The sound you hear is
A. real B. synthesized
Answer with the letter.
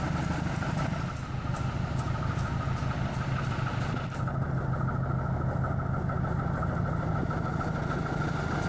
A